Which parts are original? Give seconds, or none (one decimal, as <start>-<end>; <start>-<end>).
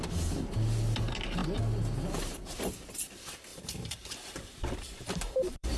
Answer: 0.0-3.5